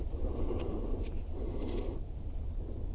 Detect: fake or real fake